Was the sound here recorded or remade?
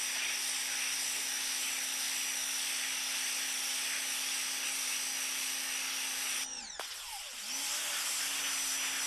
recorded